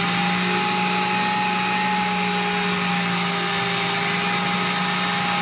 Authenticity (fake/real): real